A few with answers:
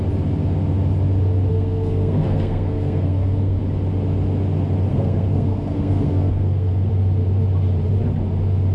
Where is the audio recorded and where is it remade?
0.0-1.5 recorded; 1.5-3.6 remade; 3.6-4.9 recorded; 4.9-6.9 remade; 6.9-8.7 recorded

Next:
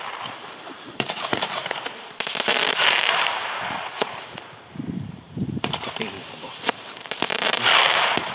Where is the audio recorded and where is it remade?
0.0-1.6 remade; 1.6-2.5 recorded; 2.5-8.3 remade

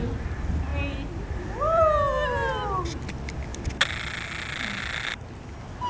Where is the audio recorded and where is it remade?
0.0-5.9 recorded

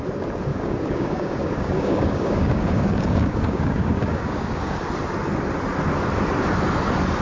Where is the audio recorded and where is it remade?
0.0-0.5 recorded; 0.5-4.8 remade; 4.8-7.2 recorded

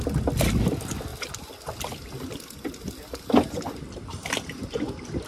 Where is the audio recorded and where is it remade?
0.0-5.3 recorded

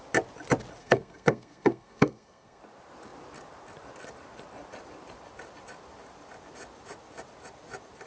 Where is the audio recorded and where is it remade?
0.0-0.8 recorded; 0.8-2.6 remade; 2.6-8.1 recorded

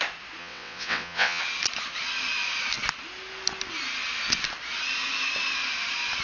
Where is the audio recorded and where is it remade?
0.0-0.4 recorded; 0.4-1.4 remade; 1.4-6.2 recorded